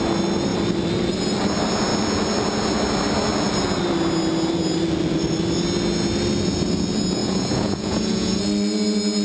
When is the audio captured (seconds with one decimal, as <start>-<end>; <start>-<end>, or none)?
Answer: 0.0-7.2; 8.4-9.2